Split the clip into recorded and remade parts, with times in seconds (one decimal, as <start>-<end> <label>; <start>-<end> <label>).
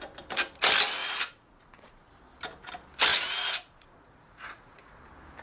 0.0-1.0 recorded; 1.0-2.1 remade; 2.1-3.1 recorded; 3.1-5.0 remade; 5.0-5.4 recorded